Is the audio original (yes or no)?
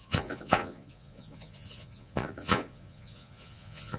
no